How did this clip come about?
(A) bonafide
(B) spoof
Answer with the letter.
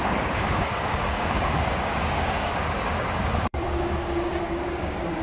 B